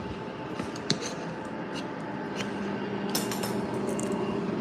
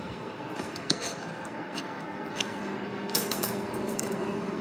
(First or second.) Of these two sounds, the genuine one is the first